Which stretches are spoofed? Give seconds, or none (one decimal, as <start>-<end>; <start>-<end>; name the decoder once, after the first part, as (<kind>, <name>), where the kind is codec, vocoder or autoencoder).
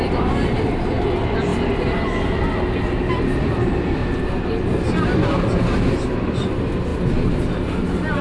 0.0-1.5 (vocoder, BigVGAN v2); 3.1-4.0; 6.0-6.9; 7.4-8.2